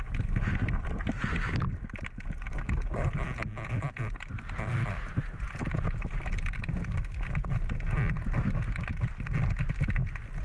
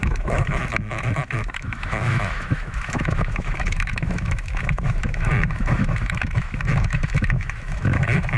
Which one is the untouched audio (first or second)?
first